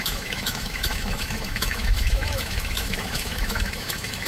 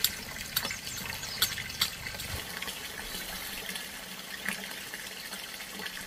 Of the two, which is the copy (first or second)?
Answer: first